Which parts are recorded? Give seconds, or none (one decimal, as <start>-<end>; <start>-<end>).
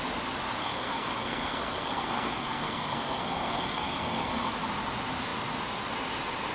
0.0-0.6; 4.5-6.5